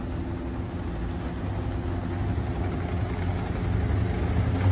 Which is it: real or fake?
real